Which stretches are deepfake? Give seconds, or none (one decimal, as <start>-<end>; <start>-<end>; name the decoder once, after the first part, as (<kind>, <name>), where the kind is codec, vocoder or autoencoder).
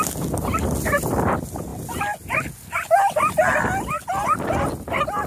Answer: none